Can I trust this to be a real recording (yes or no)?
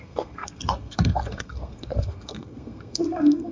no